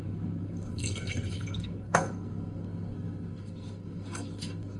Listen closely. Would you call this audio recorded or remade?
remade